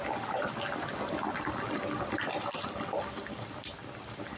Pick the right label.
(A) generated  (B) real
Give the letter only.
B